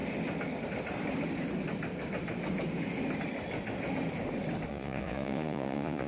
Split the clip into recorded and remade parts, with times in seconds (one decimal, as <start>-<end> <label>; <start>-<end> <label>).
0.0-4.7 recorded; 4.7-6.1 remade